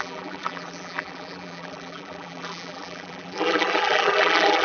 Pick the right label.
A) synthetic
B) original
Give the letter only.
A